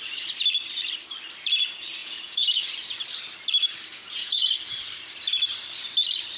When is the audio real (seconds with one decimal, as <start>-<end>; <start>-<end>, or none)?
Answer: 0.0-2.0; 2.6-3.9; 4.5-6.4